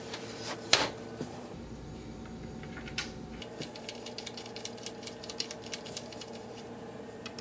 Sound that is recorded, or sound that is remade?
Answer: remade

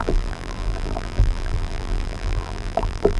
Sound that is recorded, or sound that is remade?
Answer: remade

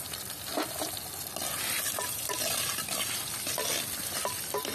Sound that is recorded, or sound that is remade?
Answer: recorded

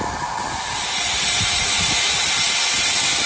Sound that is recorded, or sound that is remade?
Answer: recorded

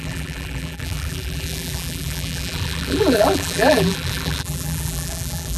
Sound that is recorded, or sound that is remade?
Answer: remade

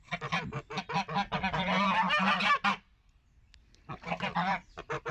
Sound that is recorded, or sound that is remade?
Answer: recorded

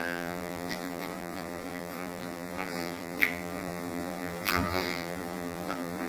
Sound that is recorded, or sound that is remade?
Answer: remade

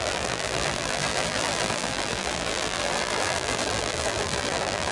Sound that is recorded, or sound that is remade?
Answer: remade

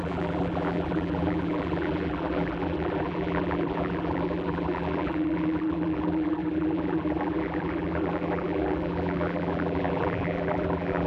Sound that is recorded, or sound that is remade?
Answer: remade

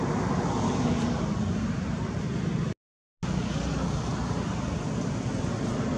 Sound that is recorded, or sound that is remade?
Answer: recorded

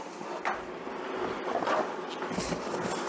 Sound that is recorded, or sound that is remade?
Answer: recorded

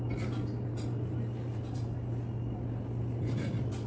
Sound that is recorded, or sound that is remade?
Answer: recorded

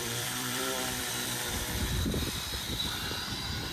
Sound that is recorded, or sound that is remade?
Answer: remade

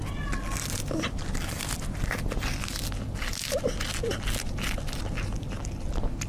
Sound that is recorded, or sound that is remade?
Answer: recorded